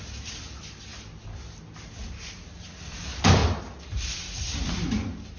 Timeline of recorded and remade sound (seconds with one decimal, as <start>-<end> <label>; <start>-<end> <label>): 0.0-0.9 remade; 0.9-1.9 recorded; 1.9-5.4 remade